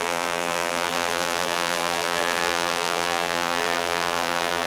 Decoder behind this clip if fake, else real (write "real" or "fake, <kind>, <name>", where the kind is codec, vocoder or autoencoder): fake, vocoder, BigVGAN v2